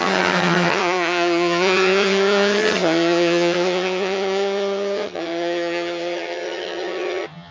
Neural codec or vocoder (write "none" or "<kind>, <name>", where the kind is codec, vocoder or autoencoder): vocoder, HiFi-GAN